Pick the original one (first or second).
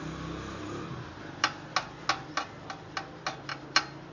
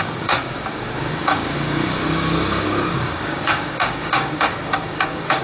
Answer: first